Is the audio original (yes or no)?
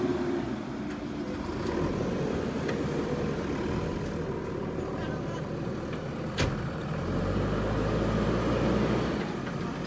yes